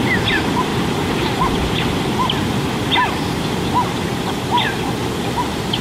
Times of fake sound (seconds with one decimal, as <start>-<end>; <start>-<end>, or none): none

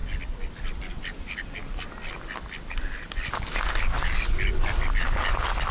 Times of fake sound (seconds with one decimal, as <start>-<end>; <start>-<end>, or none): none

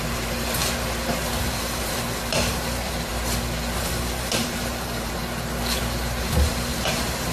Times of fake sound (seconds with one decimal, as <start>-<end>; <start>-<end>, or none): 0.0-0.6; 1.4-3.1; 3.8-5.2; 6.2-7.3

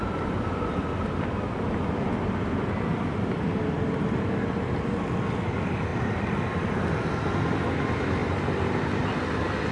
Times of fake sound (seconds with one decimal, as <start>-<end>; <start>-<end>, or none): 0.0-5.9; 6.8-8.2

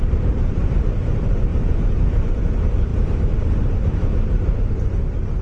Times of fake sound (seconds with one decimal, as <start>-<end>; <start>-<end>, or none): 0.0-4.4; 4.9-5.4

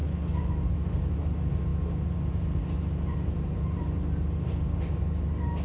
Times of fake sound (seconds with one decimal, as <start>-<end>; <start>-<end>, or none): none

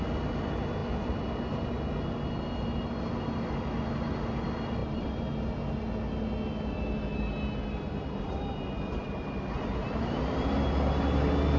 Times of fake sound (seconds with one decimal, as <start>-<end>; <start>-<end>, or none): 0.8-1.4

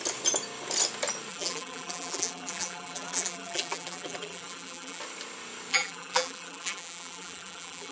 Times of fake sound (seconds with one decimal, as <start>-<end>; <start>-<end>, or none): 1.3-5.0; 5.7-7.9